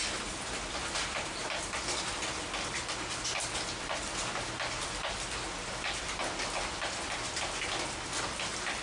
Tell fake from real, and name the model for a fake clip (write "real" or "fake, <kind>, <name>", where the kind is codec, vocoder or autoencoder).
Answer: real